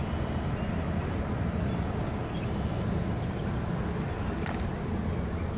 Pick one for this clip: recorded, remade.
recorded